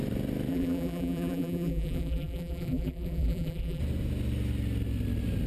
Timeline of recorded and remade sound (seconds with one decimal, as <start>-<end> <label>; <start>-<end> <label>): 0.0-0.5 recorded; 0.5-3.8 remade; 3.8-5.5 recorded